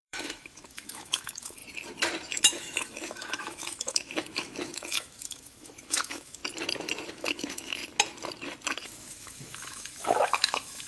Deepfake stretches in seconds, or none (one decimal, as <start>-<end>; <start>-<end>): 0.0-1.6; 2.3-6.4; 7.1-7.8; 8.8-10.9